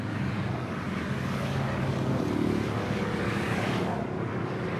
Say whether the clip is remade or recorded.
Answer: remade